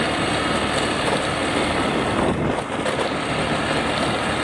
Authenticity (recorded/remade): recorded